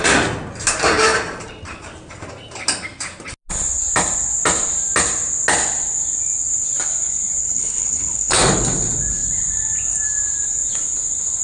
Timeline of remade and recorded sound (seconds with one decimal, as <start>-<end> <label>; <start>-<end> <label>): 0.0-7.4 recorded; 7.4-8.3 remade; 8.3-11.4 recorded